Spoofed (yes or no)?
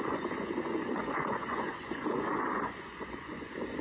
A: yes